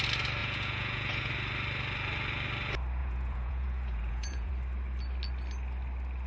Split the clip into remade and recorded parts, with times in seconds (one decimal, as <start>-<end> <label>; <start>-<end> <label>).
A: 0.0-0.4 recorded; 0.4-1.3 remade; 1.3-3.0 recorded; 3.0-4.5 remade; 4.5-6.3 recorded